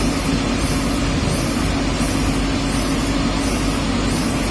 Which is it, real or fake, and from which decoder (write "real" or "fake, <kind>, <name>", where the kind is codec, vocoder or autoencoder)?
real